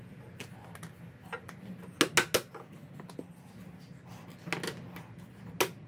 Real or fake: real